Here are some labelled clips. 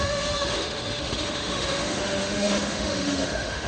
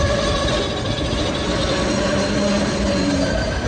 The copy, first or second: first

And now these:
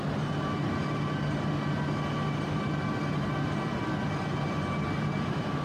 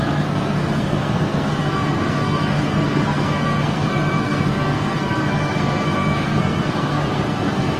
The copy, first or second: second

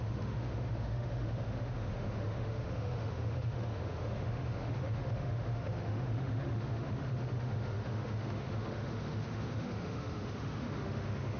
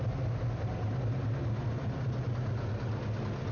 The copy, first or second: first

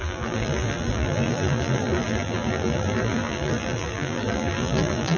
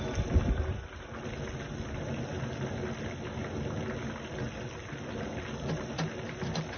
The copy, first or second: first